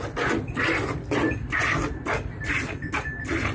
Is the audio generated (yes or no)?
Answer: no